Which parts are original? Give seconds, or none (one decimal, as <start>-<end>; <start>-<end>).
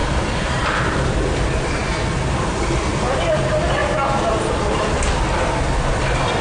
3.8-4.6